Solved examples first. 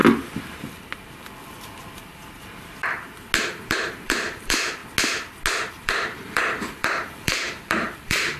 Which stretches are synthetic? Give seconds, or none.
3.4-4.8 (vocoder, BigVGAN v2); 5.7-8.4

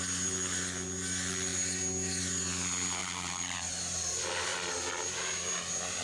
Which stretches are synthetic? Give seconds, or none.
3.0-4.1 (vocoder, BigVGAN v2)

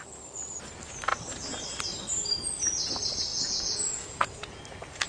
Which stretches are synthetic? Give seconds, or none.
3.3-4.6 (vocoder, Vocos)

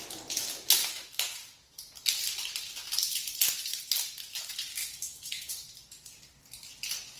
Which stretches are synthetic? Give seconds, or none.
0.8-1.4 (autoencoder, DAC-VAE); 4.8-5.5

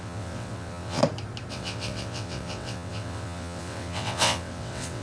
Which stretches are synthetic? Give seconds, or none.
0.0-1.0 (vocoder, WaveNeXt); 1.5-5.0

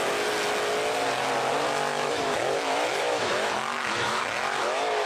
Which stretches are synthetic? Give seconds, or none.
1.9-5.1 (autoencoder, DAC-VAE)